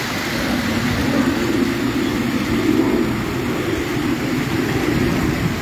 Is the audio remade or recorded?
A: recorded